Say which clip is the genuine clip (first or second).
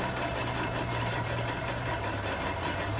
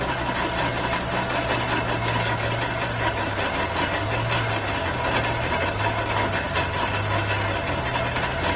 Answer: second